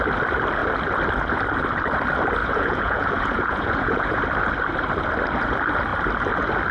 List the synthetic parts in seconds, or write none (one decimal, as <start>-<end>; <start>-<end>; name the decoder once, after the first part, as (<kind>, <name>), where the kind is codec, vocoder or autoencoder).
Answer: 2.4-4.2 (vocoder, Vocos)

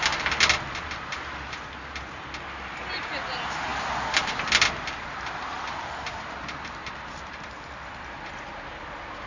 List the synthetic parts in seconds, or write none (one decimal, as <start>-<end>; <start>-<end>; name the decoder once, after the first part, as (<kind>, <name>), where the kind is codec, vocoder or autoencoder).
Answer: none

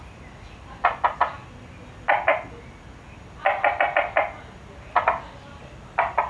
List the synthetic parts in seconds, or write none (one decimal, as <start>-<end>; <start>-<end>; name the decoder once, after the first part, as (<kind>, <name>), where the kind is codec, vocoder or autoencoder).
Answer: none